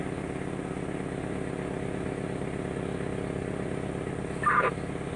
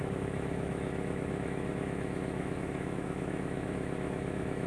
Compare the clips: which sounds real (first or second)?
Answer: first